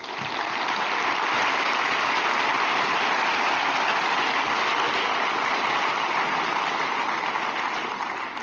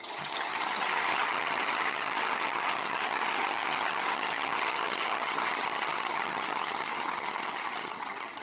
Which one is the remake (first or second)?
second